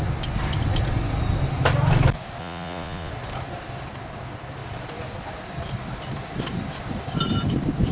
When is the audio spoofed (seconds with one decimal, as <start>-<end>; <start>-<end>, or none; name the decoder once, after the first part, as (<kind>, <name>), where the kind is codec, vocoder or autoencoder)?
2.4-3.1 (vocoder, Vocos)